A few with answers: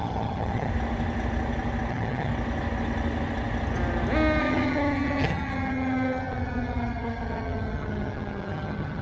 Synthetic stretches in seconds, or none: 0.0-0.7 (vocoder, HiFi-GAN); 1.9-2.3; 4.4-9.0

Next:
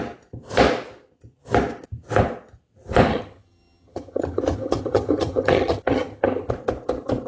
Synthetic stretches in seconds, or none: 3.1-6.5 (vocoder, HiFi-GAN)

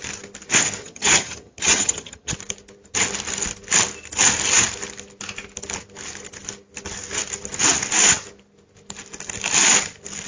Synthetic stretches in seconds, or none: 0.8-2.3 (vocoder, HiFi-GAN)

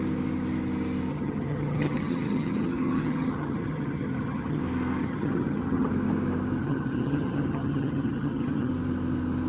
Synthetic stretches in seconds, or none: 1.1-4.6 (vocoder, HiFi-GAN); 5.0-5.9; 6.6-8.7